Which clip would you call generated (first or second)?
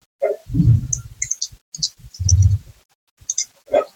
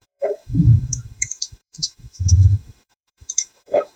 second